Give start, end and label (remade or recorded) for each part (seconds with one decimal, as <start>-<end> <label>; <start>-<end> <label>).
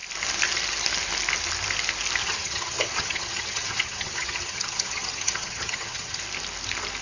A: 0.0-2.2 recorded; 2.2-6.2 remade; 6.2-7.0 recorded